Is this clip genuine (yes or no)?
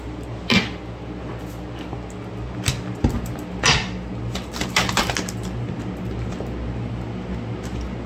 yes